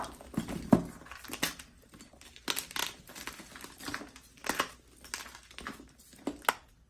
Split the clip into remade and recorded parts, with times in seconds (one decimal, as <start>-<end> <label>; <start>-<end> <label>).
0.0-6.9 recorded